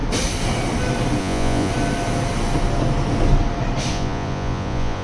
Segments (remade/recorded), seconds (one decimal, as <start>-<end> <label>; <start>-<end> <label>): 0.0-1.2 recorded; 1.2-1.7 remade; 1.7-3.9 recorded; 3.9-5.0 remade